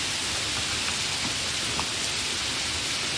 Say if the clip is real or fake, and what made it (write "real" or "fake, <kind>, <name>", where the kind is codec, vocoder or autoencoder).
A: real